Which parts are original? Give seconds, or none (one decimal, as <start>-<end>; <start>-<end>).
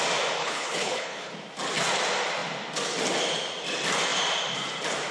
0.0-0.4; 1.3-5.1